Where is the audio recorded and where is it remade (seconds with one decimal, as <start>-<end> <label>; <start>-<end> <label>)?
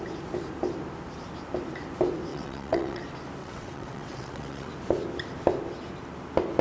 0.0-2.3 recorded; 2.3-3.0 remade; 3.0-3.4 recorded; 3.4-4.7 remade; 4.7-6.6 recorded